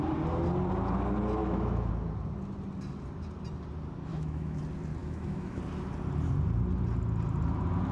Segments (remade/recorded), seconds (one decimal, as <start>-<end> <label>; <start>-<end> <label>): 0.0-1.4 recorded; 1.4-1.9 remade; 1.9-4.1 recorded; 4.1-4.6 remade; 4.6-5.0 recorded; 5.0-5.6 remade; 5.6-7.9 recorded